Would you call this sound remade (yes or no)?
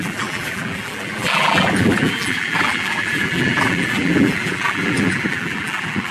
yes